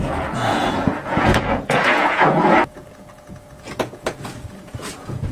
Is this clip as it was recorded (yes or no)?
no